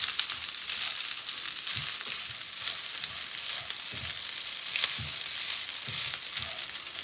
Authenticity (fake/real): real